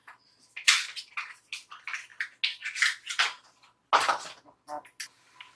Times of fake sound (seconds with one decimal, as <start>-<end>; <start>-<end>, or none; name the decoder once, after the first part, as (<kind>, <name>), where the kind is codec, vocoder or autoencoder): none